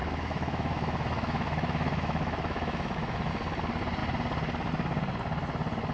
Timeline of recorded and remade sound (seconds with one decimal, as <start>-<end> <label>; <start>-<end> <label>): 0.0-3.3 remade; 3.3-5.9 recorded